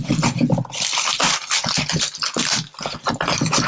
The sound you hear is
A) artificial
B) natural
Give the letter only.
B